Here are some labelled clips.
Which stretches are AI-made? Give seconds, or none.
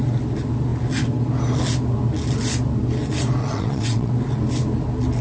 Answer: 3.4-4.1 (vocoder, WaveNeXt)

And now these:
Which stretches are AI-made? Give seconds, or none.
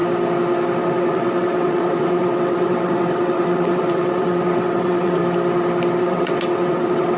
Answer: 0.8-5.2 (vocoder, WaveNeXt); 6.0-7.2